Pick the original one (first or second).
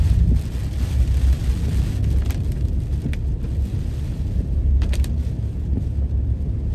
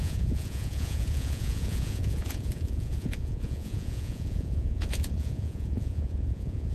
first